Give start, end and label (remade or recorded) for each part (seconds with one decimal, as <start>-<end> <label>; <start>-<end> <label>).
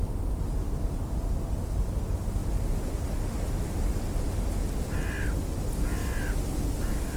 0.0-7.2 recorded